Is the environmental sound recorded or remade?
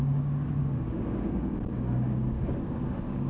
remade